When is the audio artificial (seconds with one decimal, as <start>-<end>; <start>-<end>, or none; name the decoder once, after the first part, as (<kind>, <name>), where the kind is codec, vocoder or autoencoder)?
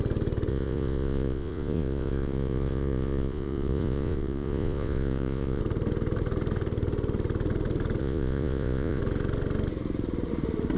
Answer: 0.5-5.6 (vocoder, Vocos); 8.0-9.0